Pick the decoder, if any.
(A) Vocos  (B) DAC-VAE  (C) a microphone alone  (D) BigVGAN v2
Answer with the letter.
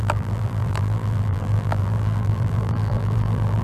D